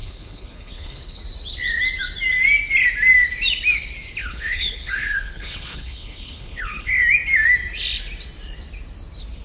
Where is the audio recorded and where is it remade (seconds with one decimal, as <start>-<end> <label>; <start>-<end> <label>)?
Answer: 0.0-1.2 remade; 1.2-4.2 recorded; 4.2-6.9 remade; 6.9-9.4 recorded